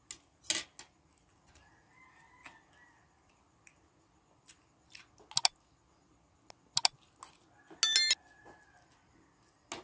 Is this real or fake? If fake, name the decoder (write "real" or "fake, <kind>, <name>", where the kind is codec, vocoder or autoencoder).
real